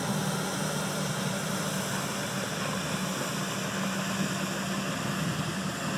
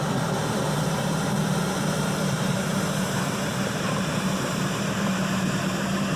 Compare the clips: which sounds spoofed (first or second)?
second